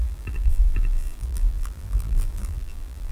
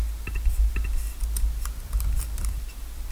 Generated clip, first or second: first